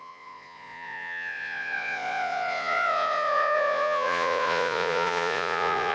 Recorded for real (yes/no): no